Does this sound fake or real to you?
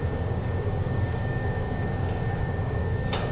fake